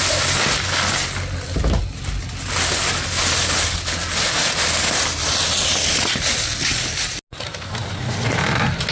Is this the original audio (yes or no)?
yes